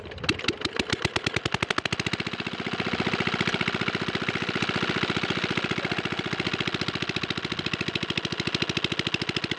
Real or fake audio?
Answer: real